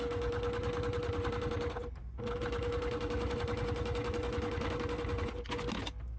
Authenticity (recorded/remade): recorded